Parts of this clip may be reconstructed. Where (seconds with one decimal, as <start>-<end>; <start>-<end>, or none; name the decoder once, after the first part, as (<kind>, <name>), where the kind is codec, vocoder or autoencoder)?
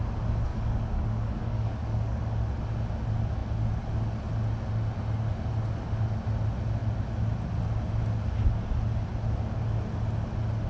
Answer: 0.5-2.2 (codec, DAC)